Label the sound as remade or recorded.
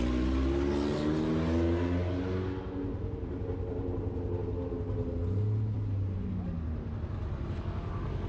recorded